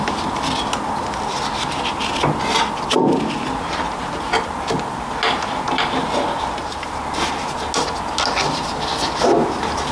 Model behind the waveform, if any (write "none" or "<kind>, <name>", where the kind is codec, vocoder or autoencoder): none